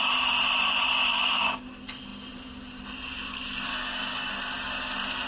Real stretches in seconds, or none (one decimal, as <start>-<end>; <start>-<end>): 0.0-1.1; 1.7-3.7; 4.3-5.3